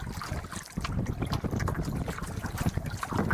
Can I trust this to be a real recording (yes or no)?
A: yes